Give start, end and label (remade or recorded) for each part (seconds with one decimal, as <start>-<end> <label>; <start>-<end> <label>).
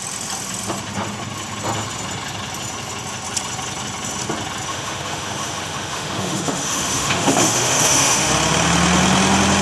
0.0-4.7 recorded; 4.7-8.3 remade; 8.3-9.6 recorded